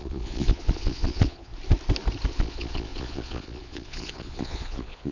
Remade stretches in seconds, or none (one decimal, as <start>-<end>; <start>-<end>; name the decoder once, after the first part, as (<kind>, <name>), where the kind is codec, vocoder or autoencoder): 0.0-1.5 (vocoder, Vocos); 2.3-5.1